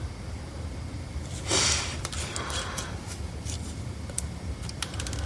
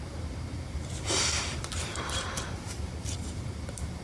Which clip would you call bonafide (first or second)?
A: first